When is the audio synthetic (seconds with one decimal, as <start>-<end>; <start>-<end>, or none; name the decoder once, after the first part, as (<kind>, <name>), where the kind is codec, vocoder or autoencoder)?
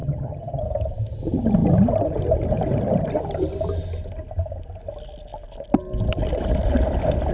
0.0-0.6 (vocoder, HiFi-GAN)